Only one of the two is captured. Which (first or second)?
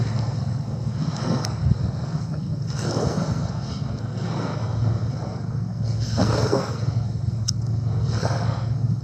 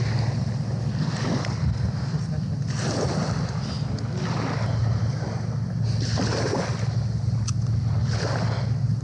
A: second